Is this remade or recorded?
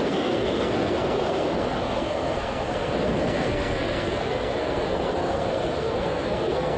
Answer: remade